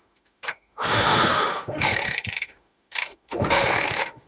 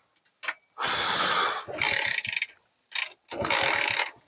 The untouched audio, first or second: second